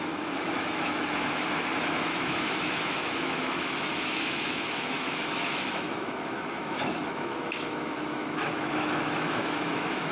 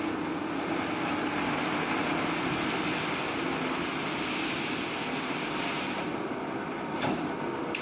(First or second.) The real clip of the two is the second